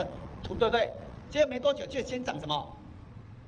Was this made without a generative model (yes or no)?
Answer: no